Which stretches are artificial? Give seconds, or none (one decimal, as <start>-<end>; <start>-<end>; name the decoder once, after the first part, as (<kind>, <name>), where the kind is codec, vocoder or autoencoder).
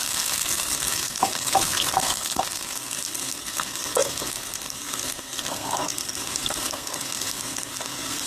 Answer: 0.0-8.3 (codec, SNAC)